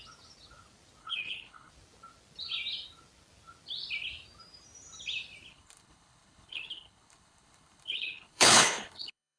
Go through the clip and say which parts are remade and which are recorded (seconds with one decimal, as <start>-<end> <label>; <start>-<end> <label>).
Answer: 0.0-1.0 recorded; 1.0-1.7 remade; 1.7-5.5 recorded; 5.5-9.4 remade

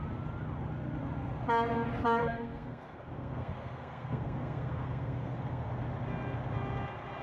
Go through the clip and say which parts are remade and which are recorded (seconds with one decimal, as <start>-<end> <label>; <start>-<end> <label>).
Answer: 0.0-2.2 recorded; 2.2-5.7 remade; 5.7-7.2 recorded

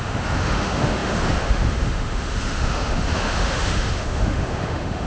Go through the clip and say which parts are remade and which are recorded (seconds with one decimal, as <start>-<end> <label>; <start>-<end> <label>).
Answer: 0.0-5.1 remade

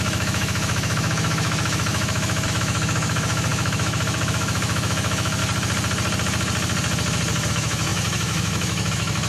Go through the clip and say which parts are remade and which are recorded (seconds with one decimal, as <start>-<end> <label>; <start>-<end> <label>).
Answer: 0.0-5.4 remade; 5.4-7.5 recorded; 7.5-9.3 remade

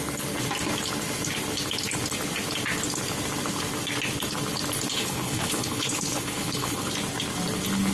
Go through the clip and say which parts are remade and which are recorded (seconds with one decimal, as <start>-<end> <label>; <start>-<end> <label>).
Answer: 0.0-4.9 recorded; 4.9-6.9 remade; 6.9-7.9 recorded

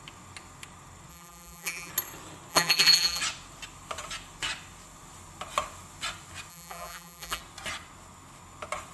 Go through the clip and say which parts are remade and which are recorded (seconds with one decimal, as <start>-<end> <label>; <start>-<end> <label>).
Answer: 0.0-1.1 recorded; 1.1-1.9 remade; 1.9-2.5 recorded; 2.5-3.2 remade; 3.2-6.5 recorded; 6.5-7.4 remade; 7.4-8.9 recorded

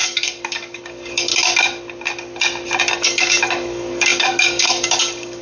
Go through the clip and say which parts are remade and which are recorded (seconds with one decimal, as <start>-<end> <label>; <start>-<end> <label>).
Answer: 0.0-1.3 remade; 1.3-2.9 recorded; 2.9-5.4 remade